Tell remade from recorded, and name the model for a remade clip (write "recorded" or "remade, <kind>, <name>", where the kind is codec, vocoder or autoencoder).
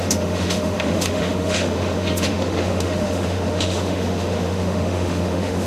remade, autoencoder, DAC-VAE